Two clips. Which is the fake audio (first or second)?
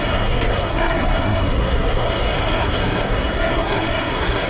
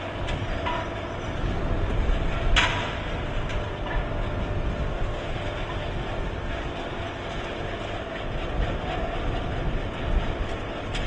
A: first